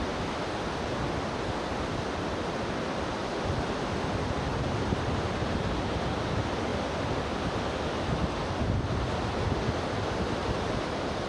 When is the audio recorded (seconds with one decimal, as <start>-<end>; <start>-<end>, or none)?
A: 0.0-4.5; 5.5-10.4